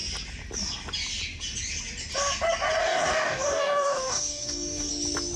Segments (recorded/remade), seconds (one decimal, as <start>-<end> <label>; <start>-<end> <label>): 0.0-2.8 recorded; 2.8-4.9 remade; 4.9-5.4 recorded